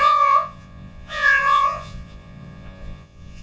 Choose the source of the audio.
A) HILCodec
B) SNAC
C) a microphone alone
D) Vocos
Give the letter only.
D